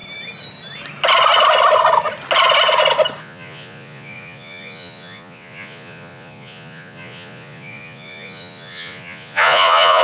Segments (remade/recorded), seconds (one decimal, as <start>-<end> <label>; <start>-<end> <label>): 0.0-3.2 recorded; 3.2-10.0 remade